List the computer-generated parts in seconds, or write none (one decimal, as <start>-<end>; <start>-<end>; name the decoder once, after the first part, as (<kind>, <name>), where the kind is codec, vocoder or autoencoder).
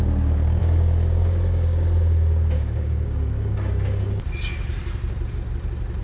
0.6-4.2 (codec, DAC)